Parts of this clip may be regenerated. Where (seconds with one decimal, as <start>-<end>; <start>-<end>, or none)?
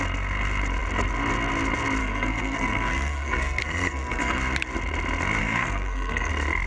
2.0-4.4; 5.4-6.3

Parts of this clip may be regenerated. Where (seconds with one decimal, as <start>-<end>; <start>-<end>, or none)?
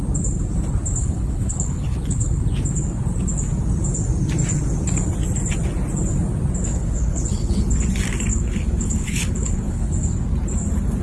1.0-2.4; 6.7-7.6; 8.3-9.9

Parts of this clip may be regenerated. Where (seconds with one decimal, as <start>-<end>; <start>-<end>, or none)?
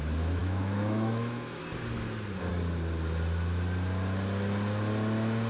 0.4-1.6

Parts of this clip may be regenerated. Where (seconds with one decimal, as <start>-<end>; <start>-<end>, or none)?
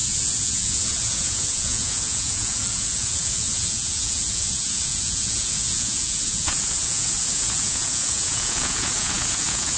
0.0-9.8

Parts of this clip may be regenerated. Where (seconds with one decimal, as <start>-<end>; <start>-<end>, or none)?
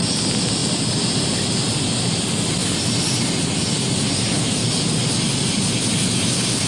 none